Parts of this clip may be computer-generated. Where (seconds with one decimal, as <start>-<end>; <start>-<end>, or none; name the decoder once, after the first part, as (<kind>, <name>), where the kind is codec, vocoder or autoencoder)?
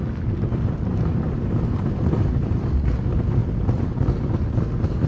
0.9-2.9 (vocoder, BigVGAN v2)